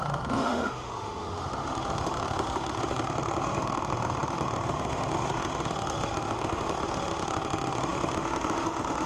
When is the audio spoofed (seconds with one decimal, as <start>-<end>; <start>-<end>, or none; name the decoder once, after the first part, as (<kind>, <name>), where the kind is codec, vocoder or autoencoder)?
0.0-9.1 (autoencoder, DAC-VAE)